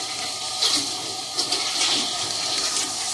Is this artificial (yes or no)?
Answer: no